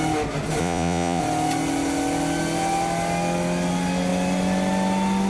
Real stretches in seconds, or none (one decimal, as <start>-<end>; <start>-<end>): 0.0-0.6; 1.2-5.3